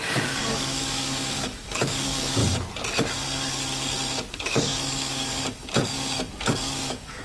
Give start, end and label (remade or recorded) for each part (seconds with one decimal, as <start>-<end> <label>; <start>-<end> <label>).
0.0-2.4 remade; 2.4-4.3 recorded; 4.3-7.2 remade